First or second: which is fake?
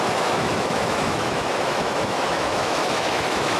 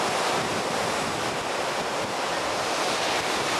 first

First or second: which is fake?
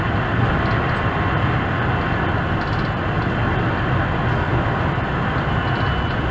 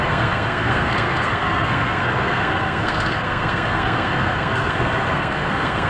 second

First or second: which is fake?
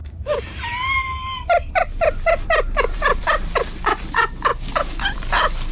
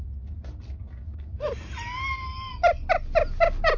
first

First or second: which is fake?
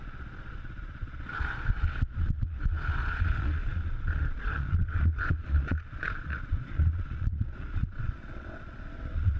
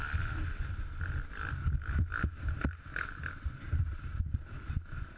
first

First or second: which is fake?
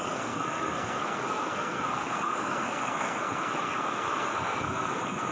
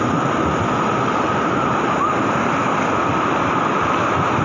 first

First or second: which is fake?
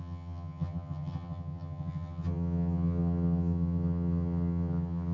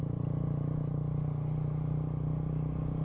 first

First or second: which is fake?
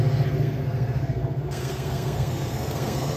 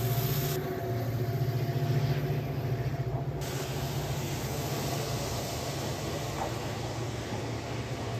first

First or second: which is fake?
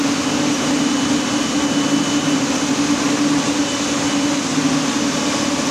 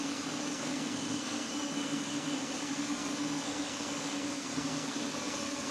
second